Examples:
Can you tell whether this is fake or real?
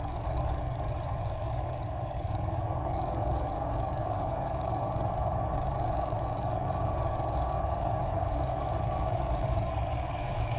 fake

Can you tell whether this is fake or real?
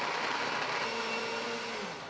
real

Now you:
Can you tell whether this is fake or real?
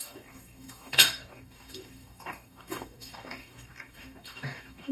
fake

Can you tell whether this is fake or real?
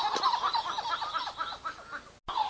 real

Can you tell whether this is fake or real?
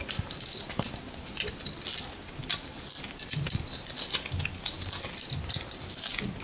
real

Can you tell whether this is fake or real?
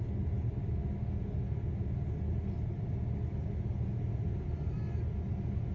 real